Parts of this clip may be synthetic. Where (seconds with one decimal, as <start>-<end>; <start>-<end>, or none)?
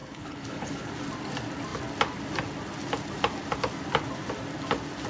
0.0-0.9